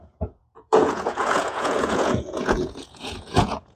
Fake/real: fake